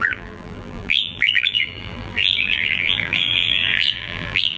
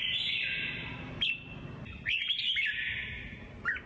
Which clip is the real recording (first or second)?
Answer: second